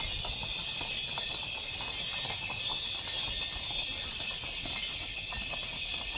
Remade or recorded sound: recorded